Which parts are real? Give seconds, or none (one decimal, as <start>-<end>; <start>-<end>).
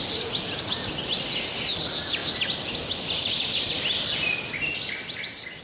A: 0.0-5.6